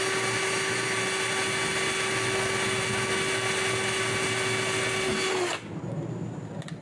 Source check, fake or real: real